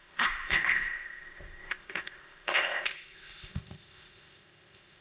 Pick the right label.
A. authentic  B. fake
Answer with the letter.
B